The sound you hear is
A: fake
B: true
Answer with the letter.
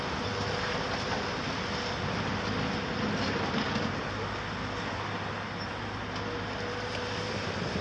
B